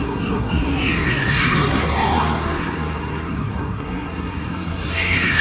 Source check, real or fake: fake